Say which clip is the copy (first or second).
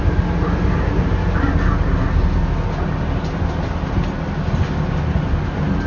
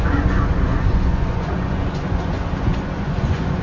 second